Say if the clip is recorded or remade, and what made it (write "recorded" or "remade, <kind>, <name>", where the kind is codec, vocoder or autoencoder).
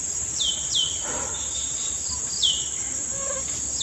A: remade, vocoder, BigVGAN v2